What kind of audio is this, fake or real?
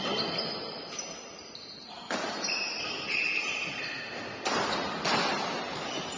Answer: real